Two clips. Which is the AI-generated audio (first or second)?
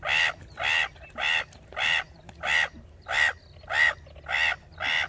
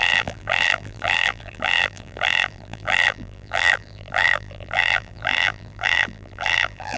second